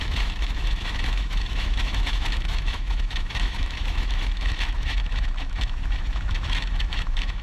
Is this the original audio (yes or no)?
no